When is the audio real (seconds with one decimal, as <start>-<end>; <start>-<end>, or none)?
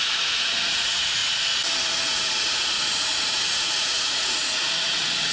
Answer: 1.2-1.8